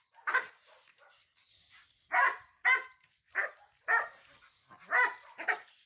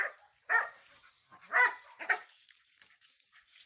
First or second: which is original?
first